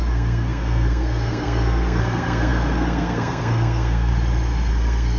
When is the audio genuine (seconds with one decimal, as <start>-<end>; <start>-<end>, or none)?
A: 4.1-4.7